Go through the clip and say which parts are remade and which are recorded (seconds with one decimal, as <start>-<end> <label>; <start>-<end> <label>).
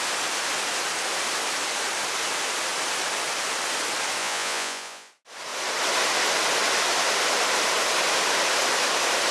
0.0-4.2 recorded; 4.2-5.1 remade; 5.1-9.3 recorded